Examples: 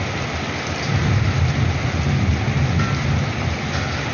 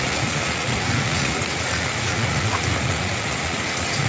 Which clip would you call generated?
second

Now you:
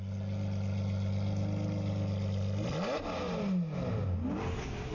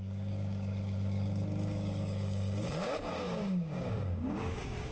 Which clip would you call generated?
second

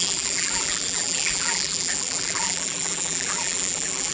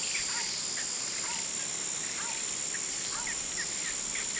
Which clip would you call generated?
first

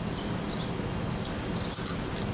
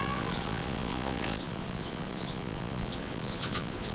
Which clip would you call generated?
second